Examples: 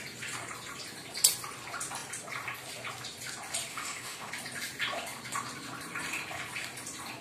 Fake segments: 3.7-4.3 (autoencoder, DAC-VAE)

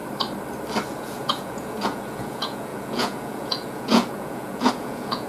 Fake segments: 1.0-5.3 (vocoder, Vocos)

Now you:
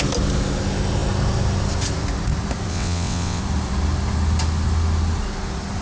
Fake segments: 2.7-3.4 (vocoder, WaveNeXt)

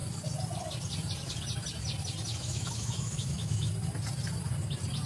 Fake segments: 2.3-3.7 (autoencoder, DAC-VAE)